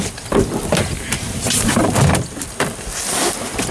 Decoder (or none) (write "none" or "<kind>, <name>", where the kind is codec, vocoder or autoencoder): none